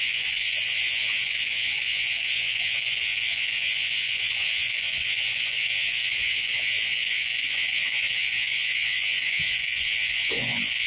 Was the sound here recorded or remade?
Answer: remade